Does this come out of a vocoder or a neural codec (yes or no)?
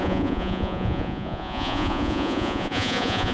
yes